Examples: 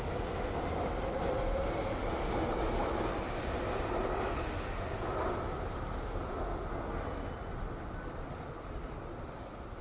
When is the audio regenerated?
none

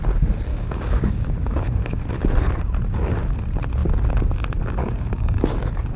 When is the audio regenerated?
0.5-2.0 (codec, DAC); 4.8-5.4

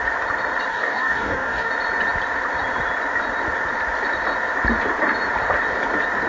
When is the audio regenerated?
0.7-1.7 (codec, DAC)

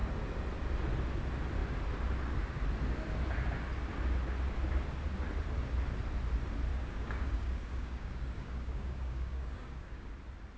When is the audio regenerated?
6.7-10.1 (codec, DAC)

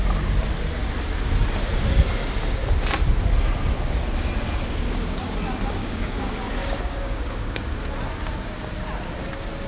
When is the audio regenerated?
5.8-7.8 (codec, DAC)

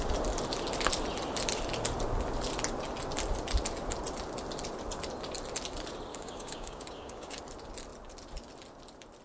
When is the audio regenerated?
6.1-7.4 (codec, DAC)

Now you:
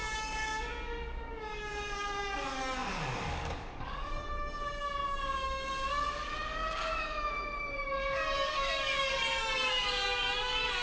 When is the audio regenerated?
0.0-10.8 (codec, DAC)